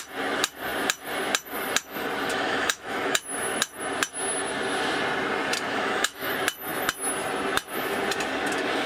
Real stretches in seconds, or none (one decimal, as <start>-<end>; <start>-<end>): 0.0-2.3; 3.2-5.7; 6.3-8.9